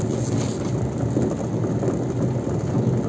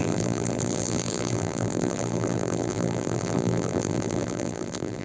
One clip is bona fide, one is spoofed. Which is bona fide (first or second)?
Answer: first